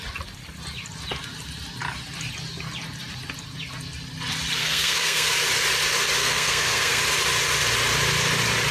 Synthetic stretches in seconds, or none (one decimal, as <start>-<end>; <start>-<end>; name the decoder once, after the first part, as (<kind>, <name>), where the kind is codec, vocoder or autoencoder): 4.6-5.3 (codec, SNAC); 6.2-7.0